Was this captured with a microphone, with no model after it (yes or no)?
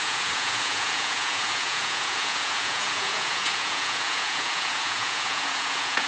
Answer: no